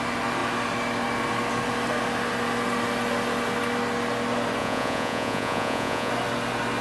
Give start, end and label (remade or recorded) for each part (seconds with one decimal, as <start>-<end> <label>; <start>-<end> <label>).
0.0-4.6 recorded; 4.6-6.1 remade; 6.1-6.8 recorded